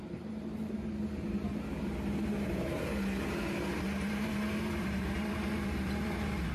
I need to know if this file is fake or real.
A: fake